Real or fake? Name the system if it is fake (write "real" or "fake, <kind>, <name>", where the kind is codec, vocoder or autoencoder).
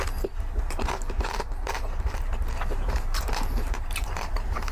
fake, vocoder, BigVGAN v2